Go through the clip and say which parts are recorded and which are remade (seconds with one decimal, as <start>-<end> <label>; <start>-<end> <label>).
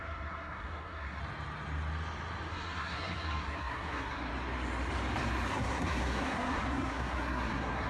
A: 0.0-1.2 remade; 1.2-2.5 recorded; 2.5-4.3 remade; 4.3-5.5 recorded; 5.5-7.9 remade